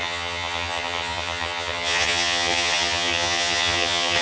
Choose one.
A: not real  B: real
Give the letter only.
A